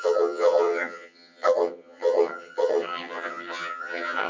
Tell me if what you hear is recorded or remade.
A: remade